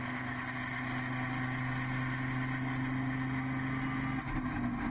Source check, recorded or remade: recorded